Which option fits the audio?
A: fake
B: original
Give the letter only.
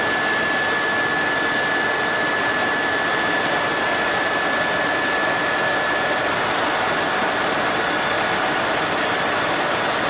B